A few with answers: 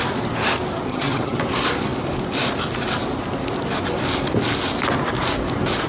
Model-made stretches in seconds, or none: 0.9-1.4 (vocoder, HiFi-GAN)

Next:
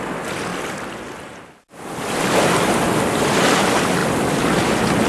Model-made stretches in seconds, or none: none